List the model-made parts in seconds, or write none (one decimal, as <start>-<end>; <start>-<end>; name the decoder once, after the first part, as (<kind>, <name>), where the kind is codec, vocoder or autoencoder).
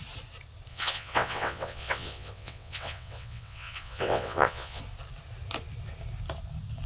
0.7-4.8 (vocoder, WaveNeXt)